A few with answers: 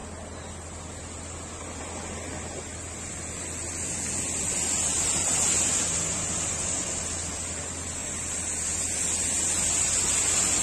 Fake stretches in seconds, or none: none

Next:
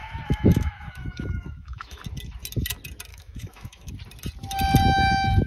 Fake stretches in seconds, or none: 0.0-2.0 (autoencoder, DAC-VAE); 3.1-3.9